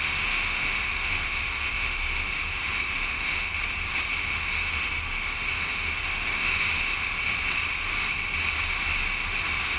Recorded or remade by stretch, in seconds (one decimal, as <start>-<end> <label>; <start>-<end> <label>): 0.0-3.5 remade; 3.5-4.2 recorded; 4.2-6.9 remade; 6.9-9.8 recorded